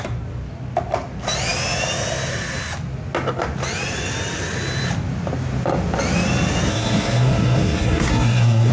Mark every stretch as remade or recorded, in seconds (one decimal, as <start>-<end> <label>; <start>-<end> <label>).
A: 0.0-6.7 recorded; 6.7-8.7 remade